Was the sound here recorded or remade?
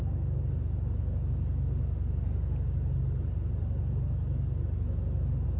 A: recorded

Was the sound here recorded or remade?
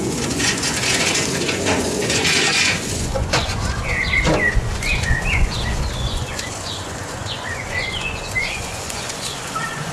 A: remade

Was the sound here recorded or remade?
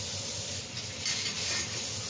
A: recorded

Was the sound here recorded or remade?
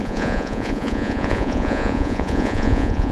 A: remade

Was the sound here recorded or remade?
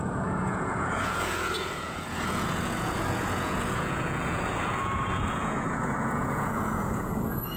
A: remade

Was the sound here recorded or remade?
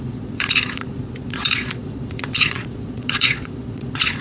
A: remade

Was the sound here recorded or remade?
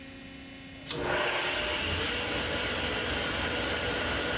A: recorded